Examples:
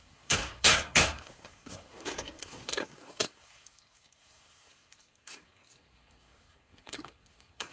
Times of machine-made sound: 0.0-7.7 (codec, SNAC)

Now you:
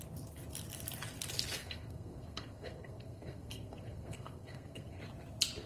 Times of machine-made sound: 1.6-5.0 (codec, SNAC)

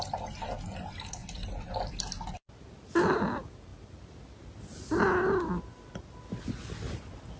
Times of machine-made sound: none

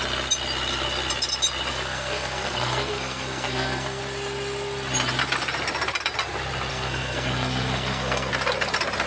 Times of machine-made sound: 1.7-4.0 (codec, SNAC); 6.7-8.3

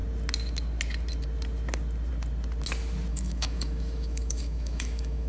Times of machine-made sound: 3.1-5.3 (autoencoder, DAC-VAE)

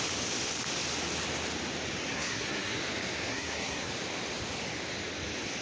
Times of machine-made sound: 2.1-2.8 (codec, SNAC); 3.3-3.9

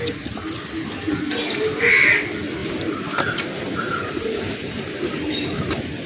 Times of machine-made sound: 2.6-5.6 (vocoder, BigVGAN v2)

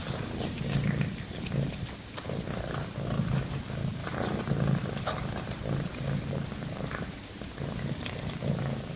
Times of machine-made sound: none